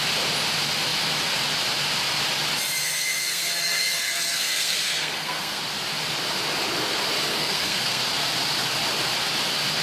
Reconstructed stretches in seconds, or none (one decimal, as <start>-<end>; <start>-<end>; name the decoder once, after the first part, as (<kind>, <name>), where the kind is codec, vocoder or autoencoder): 2.8-5.6 (codec, SNAC); 7.3-8.0